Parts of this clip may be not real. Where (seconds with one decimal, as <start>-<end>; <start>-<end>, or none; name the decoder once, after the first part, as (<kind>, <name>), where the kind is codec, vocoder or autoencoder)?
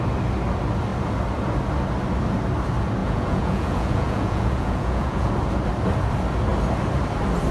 3.0-5.3 (vocoder, Vocos)